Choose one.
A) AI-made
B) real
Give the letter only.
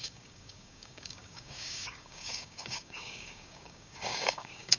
A